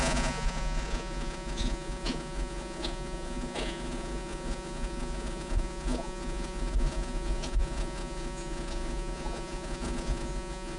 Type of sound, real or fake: fake